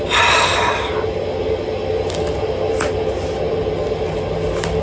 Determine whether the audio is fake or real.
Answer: real